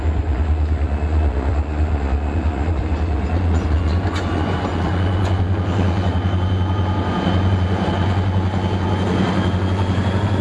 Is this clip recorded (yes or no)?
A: no